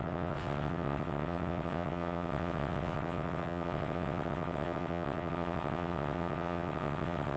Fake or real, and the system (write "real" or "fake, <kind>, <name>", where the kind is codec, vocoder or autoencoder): fake, vocoder, WaveNeXt